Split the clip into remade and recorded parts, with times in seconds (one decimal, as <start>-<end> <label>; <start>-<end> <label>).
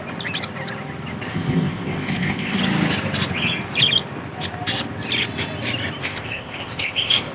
0.0-1.3 recorded; 1.3-2.6 remade; 2.6-6.0 recorded; 6.0-7.3 remade